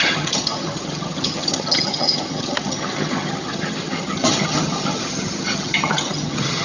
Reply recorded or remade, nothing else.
remade